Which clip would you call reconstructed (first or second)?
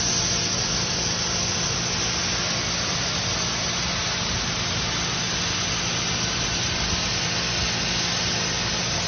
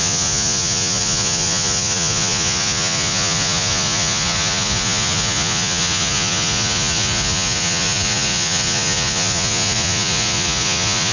second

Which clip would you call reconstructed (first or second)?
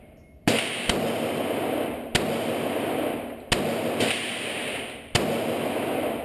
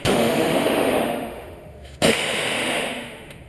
second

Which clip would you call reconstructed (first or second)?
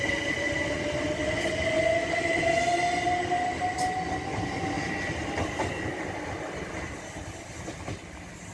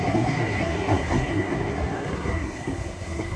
second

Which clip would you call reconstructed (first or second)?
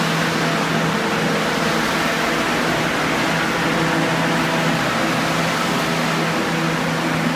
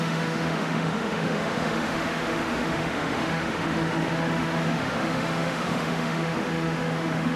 second